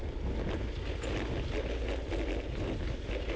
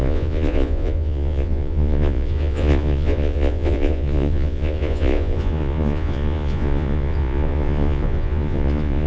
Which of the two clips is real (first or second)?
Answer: first